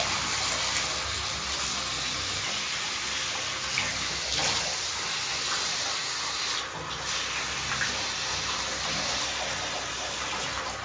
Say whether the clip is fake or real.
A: real